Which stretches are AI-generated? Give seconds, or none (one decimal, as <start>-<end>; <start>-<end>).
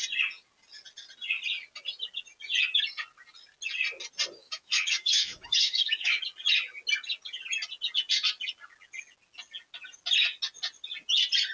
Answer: 4.4-6.2